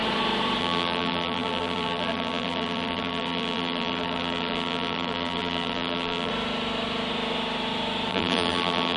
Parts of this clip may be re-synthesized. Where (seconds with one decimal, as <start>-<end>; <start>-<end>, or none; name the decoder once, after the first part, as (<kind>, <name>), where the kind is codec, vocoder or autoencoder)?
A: 0.6-6.3 (vocoder, BigVGAN v2); 8.1-9.0